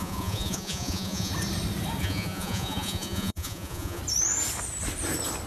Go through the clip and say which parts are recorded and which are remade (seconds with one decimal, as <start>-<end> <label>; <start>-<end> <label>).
0.0-1.3 remade; 1.3-2.0 recorded; 2.0-4.0 remade; 4.0-5.5 recorded